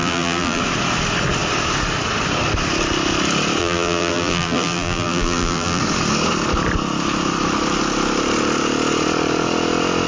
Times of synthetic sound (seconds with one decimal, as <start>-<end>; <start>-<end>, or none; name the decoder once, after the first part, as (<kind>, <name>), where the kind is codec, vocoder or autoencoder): 0.0-0.6 (vocoder, BigVGAN v2); 3.6-5.8